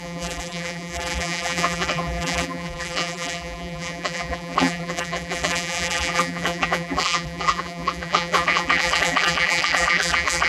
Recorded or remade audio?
remade